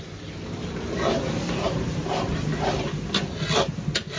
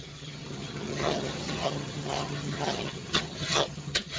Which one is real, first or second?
first